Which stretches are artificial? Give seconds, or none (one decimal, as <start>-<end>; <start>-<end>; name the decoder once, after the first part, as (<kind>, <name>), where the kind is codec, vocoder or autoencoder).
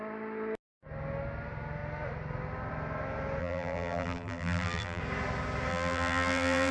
3.4-5.0 (vocoder, BigVGAN v2); 5.7-6.7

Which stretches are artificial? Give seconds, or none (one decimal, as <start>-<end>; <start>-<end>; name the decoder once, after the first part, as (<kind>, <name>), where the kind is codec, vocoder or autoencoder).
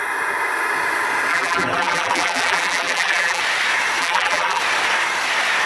1.3-3.4 (vocoder, BigVGAN v2); 4.0-4.6